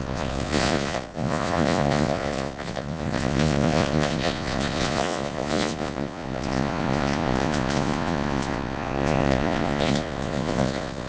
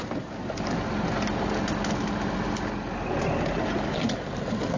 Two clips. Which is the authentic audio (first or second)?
second